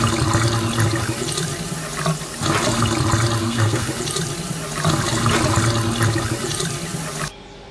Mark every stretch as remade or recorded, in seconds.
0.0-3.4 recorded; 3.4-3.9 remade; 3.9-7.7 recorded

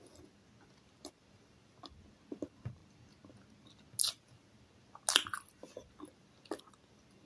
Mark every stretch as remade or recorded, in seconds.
0.0-7.3 recorded

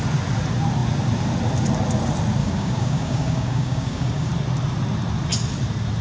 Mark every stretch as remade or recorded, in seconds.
0.0-2.4 recorded; 2.4-4.3 remade; 4.3-6.0 recorded

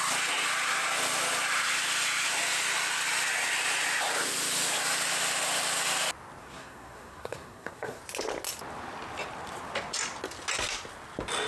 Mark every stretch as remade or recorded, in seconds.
0.0-6.4 recorded; 6.4-8.0 remade; 8.0-11.5 recorded